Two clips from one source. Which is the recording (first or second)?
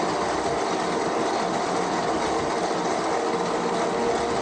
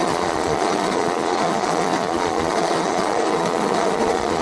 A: first